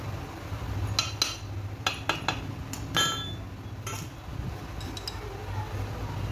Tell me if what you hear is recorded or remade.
recorded